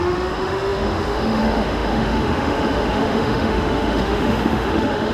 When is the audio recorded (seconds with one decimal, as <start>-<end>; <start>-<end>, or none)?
none